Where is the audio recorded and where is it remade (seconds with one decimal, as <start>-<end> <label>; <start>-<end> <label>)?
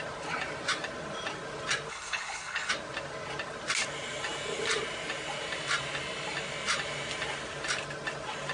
0.0-1.9 recorded; 1.9-2.7 remade; 2.7-8.5 recorded